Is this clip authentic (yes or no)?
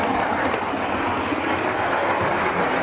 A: no